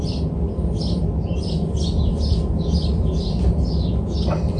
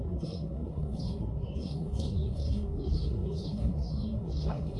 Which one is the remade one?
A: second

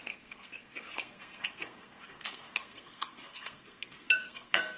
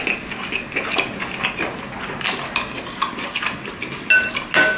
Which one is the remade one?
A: first